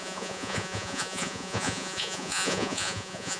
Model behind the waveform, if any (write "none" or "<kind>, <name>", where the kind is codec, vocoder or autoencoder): vocoder, Vocos